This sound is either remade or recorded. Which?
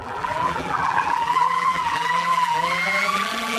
remade